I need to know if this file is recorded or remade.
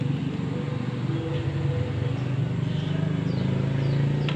recorded